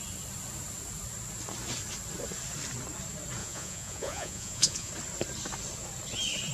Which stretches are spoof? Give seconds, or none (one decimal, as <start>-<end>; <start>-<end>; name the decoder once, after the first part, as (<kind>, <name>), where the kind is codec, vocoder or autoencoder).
3.4-4.9 (vocoder, Vocos)